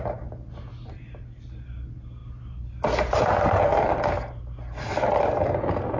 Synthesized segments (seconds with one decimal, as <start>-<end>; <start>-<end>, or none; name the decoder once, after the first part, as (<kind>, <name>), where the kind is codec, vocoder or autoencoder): none